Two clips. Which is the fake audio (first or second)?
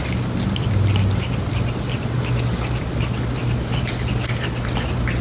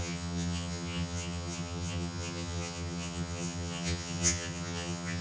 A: second